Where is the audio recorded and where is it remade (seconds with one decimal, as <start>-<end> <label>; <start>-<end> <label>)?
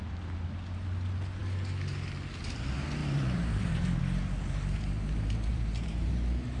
0.0-3.0 recorded; 3.0-4.0 remade; 4.0-5.5 recorded; 5.5-6.6 remade